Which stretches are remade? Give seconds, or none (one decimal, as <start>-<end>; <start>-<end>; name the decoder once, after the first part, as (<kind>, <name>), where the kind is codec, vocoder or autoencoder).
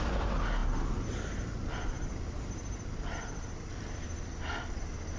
none